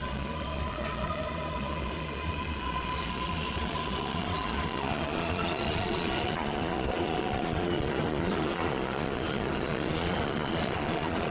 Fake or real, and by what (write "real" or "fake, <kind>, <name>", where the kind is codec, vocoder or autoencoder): fake, vocoder, Vocos